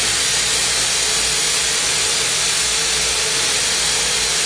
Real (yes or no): yes